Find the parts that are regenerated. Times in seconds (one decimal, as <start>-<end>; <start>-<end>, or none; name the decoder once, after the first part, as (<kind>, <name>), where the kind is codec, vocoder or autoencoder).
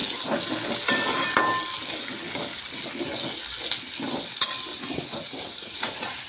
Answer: 4.7-6.3 (vocoder, Vocos)